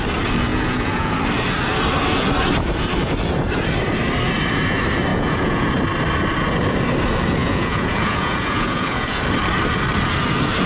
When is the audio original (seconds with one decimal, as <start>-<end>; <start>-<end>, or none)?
0.0-0.5; 1.1-5.1; 5.7-7.4; 9.2-10.7